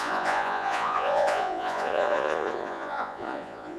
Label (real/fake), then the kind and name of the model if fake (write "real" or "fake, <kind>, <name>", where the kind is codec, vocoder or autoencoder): fake, vocoder, Vocos